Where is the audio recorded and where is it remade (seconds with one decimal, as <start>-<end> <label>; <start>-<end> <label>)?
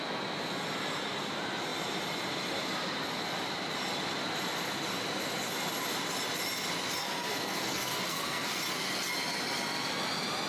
0.0-7.0 recorded; 7.0-8.6 remade; 8.6-10.5 recorded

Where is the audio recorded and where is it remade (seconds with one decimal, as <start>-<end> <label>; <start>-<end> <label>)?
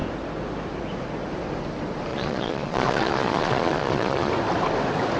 0.0-2.1 recorded; 2.1-4.3 remade; 4.3-5.2 recorded